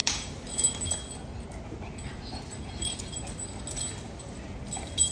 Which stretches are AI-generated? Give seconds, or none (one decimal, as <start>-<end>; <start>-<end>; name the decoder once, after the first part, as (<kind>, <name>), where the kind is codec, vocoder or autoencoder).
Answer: 0.0-0.5 (vocoder, BigVGAN v2); 2.1-3.1